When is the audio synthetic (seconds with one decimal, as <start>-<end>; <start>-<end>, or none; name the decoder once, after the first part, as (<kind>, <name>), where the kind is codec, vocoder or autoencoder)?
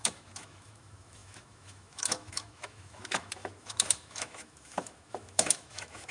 0.0-6.1 (autoencoder, DAC-VAE)